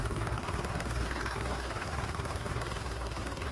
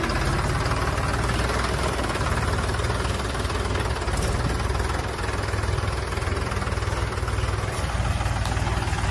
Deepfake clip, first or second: first